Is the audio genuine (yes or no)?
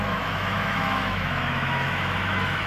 no